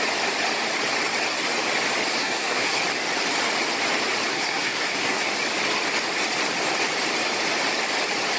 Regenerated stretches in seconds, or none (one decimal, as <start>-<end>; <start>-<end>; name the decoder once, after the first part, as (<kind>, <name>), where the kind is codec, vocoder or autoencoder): 2.2-2.8 (codec, SNAC); 4.3-5.3